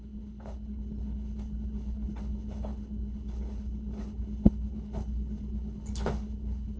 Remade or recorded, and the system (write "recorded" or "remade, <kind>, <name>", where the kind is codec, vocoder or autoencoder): remade, codec, HILCodec